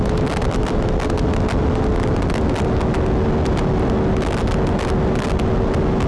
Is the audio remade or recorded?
recorded